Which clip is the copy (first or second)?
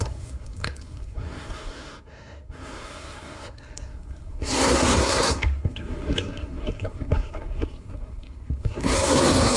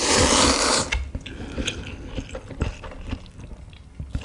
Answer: first